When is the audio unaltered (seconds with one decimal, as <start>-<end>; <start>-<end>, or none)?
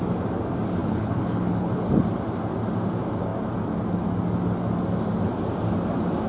0.0-0.8; 1.8-6.3